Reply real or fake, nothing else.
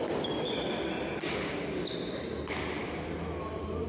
real